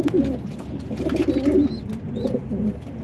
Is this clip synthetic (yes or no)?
no